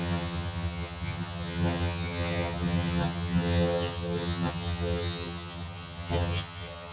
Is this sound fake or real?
fake